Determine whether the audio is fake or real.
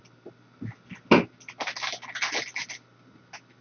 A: real